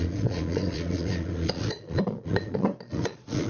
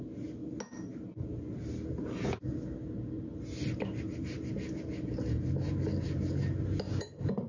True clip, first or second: second